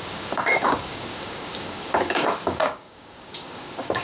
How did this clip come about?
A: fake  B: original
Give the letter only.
A